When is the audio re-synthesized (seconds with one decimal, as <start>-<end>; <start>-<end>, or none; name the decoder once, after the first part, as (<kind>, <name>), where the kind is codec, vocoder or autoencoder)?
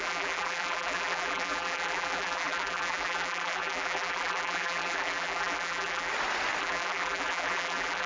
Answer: 0.0-6.1 (vocoder, BigVGAN v2); 6.6-8.1